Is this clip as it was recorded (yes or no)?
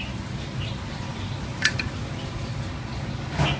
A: yes